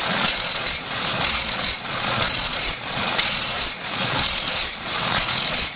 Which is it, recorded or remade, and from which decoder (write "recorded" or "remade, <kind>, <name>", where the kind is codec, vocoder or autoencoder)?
remade, vocoder, Vocos